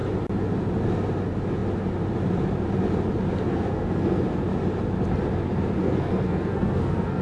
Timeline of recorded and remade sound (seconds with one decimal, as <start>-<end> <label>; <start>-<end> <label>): 0.0-3.5 recorded; 3.5-4.2 remade; 4.2-5.8 recorded; 5.8-7.2 remade